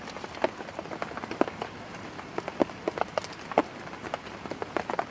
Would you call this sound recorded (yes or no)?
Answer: yes